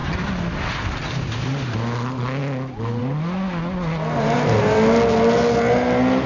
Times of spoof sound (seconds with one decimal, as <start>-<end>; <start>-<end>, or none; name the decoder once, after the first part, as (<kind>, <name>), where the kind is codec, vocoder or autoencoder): none